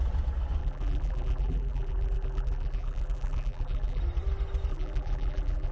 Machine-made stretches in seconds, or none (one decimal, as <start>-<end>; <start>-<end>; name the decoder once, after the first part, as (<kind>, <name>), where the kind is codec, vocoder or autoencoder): 0.6-4.0 (vocoder, BigVGAN v2); 4.7-5.7